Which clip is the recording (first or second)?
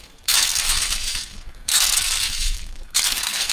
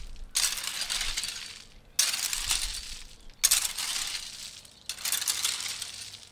second